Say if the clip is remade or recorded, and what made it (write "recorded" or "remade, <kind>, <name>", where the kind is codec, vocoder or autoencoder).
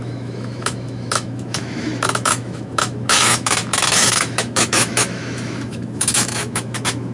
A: remade, autoencoder, DAC-VAE